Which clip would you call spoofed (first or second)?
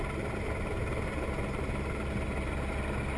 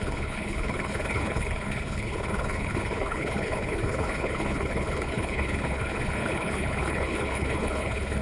second